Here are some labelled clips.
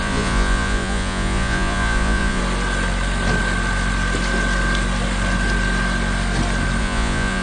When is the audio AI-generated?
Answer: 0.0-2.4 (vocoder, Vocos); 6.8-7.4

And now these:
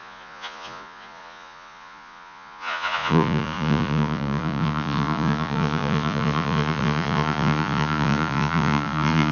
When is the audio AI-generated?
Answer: 0.0-9.3 (vocoder, Vocos)

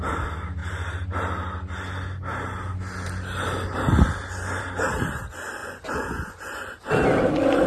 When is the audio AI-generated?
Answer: 5.6-6.7 (vocoder, Vocos)

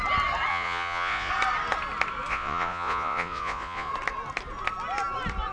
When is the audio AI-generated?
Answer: 0.5-1.3 (vocoder, Vocos); 2.3-3.9

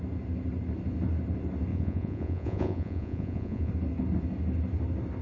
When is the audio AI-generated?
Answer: 1.7-3.7 (vocoder, Vocos)